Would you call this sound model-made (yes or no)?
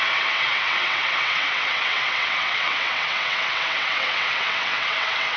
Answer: yes